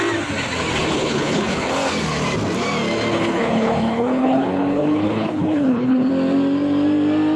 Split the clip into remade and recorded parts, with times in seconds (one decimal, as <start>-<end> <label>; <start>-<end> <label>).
0.0-0.8 recorded; 0.8-1.7 remade; 1.7-3.1 recorded; 3.1-6.1 remade; 6.1-7.4 recorded